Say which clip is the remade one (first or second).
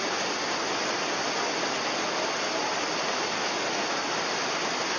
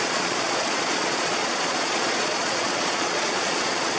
second